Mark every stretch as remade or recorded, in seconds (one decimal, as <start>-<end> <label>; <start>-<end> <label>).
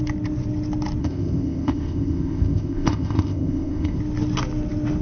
0.0-1.0 recorded; 1.0-4.0 remade; 4.0-5.0 recorded